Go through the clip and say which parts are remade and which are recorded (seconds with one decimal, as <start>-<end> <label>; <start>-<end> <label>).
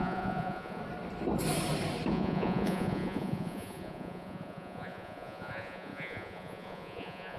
0.0-0.8 remade; 0.8-2.1 recorded; 2.1-7.4 remade